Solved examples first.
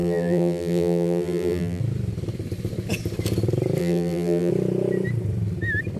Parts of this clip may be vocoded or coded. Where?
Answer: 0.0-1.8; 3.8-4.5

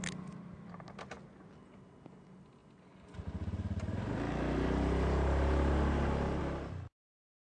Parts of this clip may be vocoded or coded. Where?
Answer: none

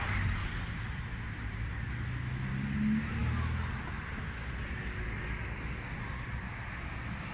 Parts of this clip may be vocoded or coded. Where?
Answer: 0.4-1.9

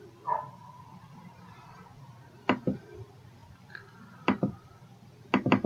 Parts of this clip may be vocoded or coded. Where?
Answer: 0.6-1.5; 3.4-4.9

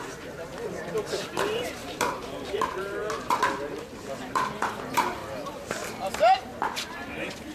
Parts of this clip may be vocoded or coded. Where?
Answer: 0.0-3.0; 4.3-5.2; 5.9-7.5

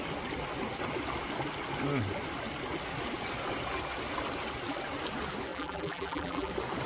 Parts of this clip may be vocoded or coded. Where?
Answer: 5.5-6.5

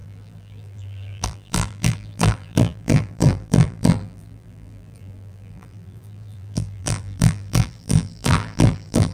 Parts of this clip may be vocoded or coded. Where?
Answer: 0.0-9.1

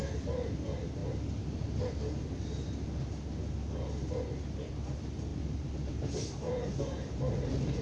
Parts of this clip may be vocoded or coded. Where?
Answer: none